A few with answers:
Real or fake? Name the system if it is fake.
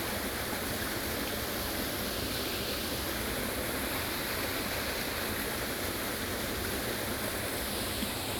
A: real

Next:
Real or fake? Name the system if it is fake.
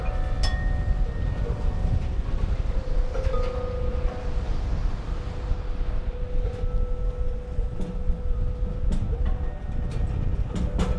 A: real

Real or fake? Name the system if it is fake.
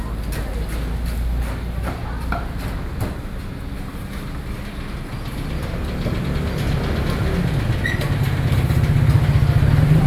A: real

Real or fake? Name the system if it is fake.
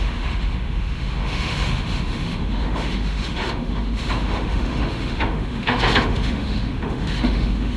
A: fake, autoencoder, DAC-VAE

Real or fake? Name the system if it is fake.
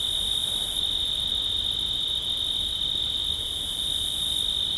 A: real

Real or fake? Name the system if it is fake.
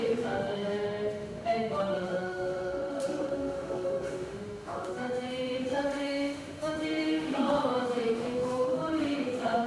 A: fake, autoencoder, DAC-VAE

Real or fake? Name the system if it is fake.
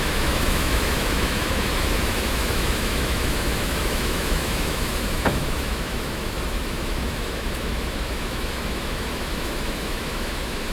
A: fake, autoencoder, DAC-VAE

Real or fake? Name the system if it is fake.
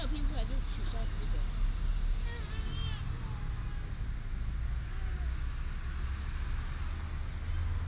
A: real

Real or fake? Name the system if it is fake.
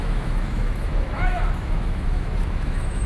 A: fake, autoencoder, DAC-VAE